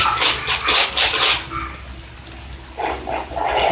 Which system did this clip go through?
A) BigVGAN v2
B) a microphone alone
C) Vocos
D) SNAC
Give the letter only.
B